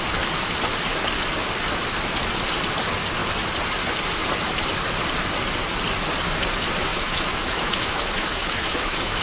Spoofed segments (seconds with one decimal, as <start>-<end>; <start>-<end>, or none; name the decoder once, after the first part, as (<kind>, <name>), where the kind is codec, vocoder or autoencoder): 6.9-9.2 (autoencoder, DAC-VAE)